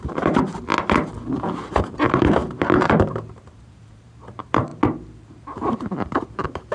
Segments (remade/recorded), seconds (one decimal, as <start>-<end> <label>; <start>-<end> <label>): 0.0-0.5 remade; 0.5-1.8 recorded; 1.8-4.7 remade; 4.7-5.3 recorded; 5.3-6.7 remade